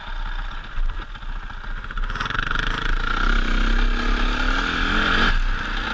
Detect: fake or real real